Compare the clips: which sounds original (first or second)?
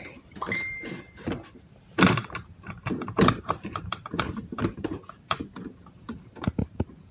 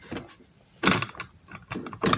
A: second